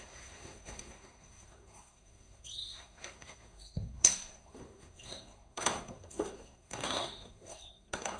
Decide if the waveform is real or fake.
fake